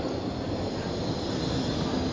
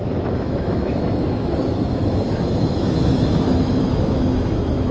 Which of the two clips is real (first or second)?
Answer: first